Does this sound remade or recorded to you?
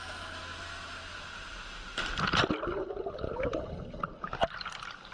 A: recorded